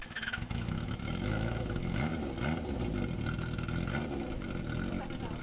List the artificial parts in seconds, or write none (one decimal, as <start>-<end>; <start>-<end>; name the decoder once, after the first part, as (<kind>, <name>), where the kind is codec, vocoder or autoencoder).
0.0-2.1 (autoencoder, DAC-VAE)